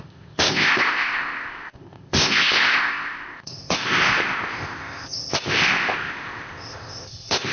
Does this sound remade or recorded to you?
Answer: remade